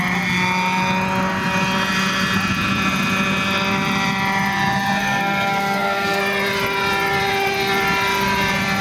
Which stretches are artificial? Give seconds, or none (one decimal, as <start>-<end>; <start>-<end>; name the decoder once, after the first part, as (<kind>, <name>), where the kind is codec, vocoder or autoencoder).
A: 5.0-6.2 (codec, SNAC)